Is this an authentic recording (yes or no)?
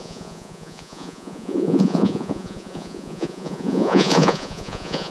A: no